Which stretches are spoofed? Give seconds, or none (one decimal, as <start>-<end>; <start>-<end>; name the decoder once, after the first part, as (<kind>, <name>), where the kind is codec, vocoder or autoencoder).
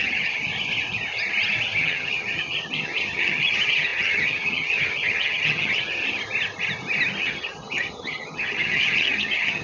0.0-0.4 (vocoder, HiFi-GAN); 1.8-6.0; 7.2-9.6